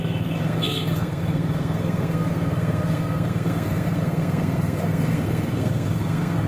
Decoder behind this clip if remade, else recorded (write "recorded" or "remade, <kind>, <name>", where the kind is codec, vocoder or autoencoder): remade, codec, SNAC